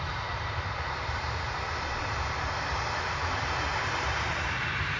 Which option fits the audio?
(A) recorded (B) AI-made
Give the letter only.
B